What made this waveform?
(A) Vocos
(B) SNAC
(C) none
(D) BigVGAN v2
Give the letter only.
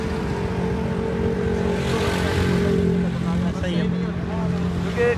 C